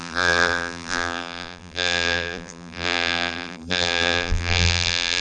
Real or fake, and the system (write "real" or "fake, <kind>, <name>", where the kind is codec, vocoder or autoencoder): fake, vocoder, BigVGAN v2